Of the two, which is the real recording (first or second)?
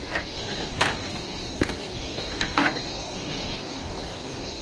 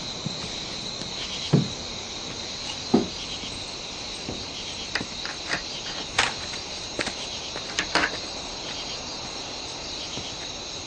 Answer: second